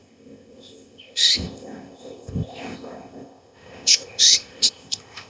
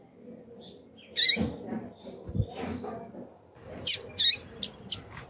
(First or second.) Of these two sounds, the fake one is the first